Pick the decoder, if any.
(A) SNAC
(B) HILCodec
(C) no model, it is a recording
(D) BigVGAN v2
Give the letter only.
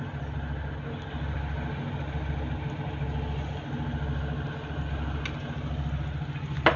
C